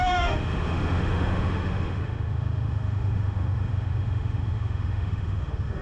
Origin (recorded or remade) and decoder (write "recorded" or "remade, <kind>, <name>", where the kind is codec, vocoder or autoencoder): remade, autoencoder, DAC-VAE